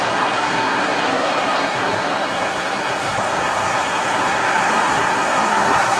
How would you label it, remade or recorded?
remade